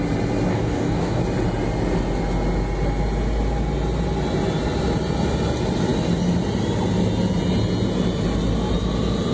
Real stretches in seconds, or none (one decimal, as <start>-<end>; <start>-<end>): 0.0-0.5; 1.2-9.3

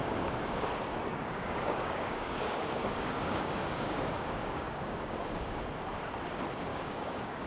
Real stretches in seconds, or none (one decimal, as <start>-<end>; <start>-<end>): 0.7-1.1; 5.6-6.7

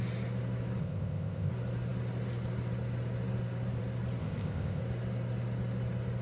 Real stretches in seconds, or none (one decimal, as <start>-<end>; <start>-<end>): 0.0-0.8; 1.5-4.2; 4.8-6.2

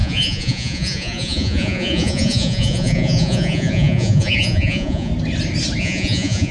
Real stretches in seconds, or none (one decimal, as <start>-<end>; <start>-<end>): 5.1-5.8

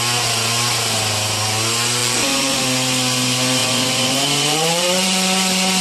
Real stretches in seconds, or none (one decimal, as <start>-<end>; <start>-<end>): 0.0-2.0; 2.6-3.6

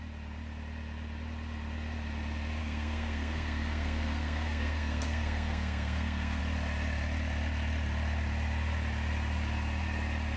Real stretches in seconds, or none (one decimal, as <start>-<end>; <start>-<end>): 0.0-2.6; 6.4-10.4

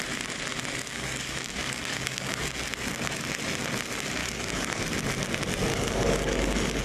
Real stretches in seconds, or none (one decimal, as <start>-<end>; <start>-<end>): 0.0-0.9; 2.4-4.2; 4.8-5.7